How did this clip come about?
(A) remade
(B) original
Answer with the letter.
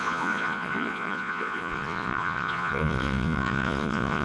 A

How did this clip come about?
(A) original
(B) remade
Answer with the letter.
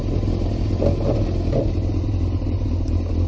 A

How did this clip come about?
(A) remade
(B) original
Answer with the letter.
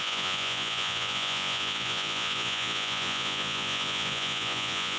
A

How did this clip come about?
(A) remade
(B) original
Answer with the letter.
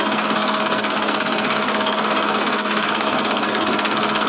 A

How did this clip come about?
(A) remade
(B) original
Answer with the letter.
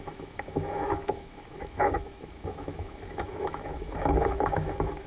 A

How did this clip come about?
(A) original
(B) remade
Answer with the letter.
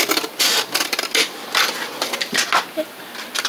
A